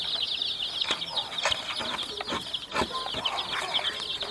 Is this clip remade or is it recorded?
recorded